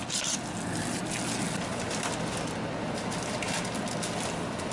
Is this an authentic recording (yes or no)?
yes